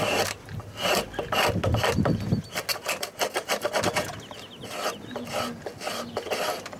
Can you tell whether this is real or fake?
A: real